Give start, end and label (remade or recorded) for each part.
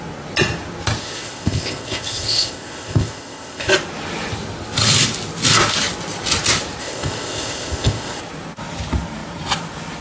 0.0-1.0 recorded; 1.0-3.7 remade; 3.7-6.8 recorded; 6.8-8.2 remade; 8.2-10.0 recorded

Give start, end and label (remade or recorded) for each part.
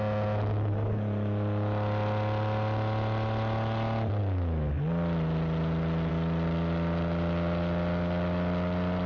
0.0-9.1 recorded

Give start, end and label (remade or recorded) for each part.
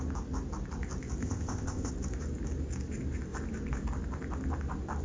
0.0-1.2 recorded; 1.2-1.9 remade; 1.9-5.0 recorded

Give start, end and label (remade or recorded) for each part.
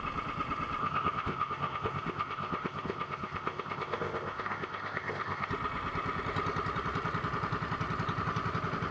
0.0-0.8 recorded; 0.8-5.5 remade; 5.5-8.9 recorded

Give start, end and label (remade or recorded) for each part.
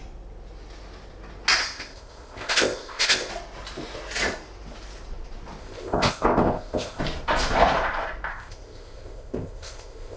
0.0-1.6 recorded; 1.6-3.3 remade; 3.3-5.6 recorded; 5.6-7.0 remade; 7.0-8.3 recorded; 8.3-10.2 remade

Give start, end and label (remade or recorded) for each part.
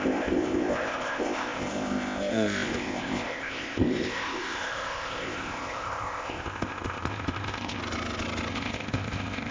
0.0-7.8 remade; 7.8-8.5 recorded; 8.5-9.5 remade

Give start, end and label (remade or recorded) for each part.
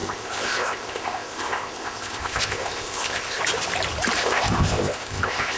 0.0-3.4 remade; 3.4-4.2 recorded; 4.2-5.6 remade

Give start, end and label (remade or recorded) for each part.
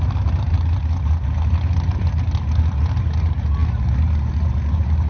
0.0-5.1 recorded